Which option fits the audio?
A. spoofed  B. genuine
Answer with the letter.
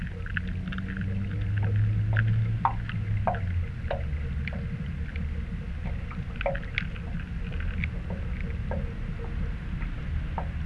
B